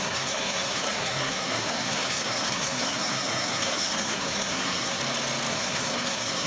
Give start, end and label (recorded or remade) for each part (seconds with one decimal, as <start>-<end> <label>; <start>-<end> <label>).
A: 0.0-5.0 remade; 5.0-5.5 recorded; 5.5-6.5 remade